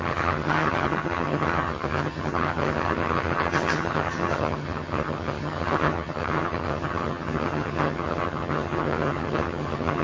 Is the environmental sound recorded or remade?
remade